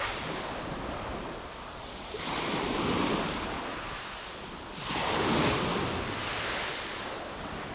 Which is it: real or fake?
real